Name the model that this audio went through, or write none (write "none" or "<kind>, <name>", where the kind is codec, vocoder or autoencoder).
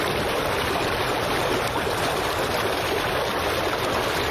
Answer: none